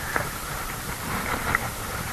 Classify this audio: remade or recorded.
remade